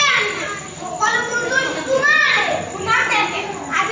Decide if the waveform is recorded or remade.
recorded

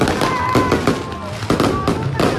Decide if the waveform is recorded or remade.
recorded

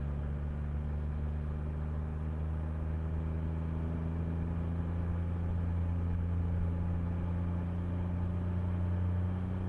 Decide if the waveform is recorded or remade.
recorded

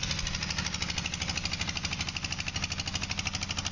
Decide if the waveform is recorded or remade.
recorded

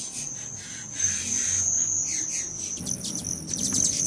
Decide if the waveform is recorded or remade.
recorded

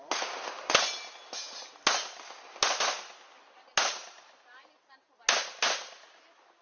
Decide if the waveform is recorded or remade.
recorded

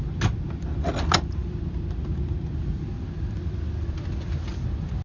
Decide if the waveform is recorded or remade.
recorded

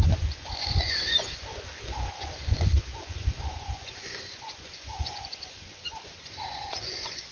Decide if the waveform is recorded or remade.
remade